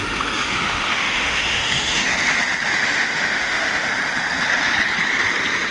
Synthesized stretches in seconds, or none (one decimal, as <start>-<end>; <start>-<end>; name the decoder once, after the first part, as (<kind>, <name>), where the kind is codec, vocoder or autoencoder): 0.0-2.1 (autoencoder, DAC-VAE); 2.7-3.9